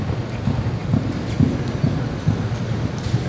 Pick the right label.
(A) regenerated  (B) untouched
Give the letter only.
B